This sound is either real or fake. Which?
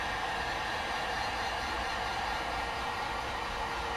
fake